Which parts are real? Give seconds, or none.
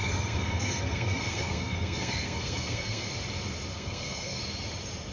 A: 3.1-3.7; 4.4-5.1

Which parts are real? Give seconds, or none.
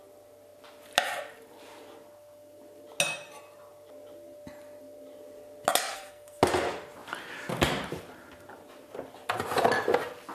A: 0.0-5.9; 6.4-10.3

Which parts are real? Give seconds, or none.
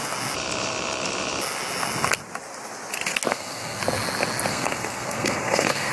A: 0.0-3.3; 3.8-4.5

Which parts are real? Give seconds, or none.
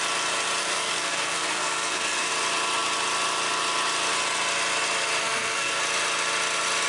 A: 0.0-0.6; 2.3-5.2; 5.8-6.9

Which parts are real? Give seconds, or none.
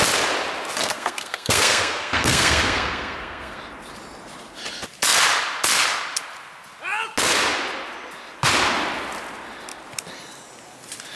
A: 0.0-0.8; 3.6-11.2